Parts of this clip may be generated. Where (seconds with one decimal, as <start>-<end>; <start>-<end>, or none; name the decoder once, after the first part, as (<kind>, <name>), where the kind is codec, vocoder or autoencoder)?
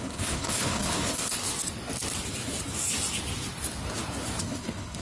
0.0-1.4 (codec, HILCodec); 4.4-5.0